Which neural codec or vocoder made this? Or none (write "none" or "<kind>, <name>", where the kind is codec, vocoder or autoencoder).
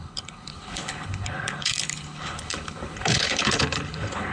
codec, HILCodec